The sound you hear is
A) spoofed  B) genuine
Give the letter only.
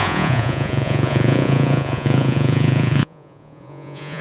A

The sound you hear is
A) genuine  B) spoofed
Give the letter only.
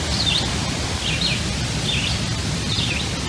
A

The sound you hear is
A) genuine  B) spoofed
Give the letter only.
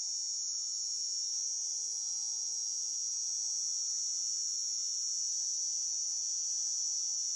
B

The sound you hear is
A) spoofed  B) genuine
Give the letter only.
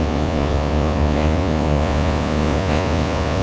A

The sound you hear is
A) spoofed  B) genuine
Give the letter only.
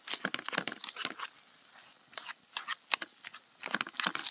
B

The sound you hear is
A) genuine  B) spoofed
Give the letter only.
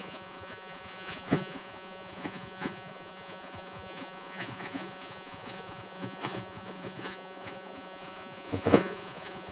B